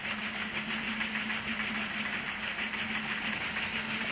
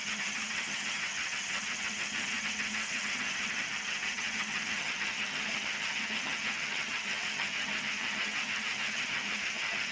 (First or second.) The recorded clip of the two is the first